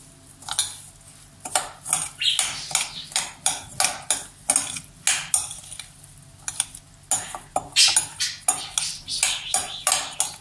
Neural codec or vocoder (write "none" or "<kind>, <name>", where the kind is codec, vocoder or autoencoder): none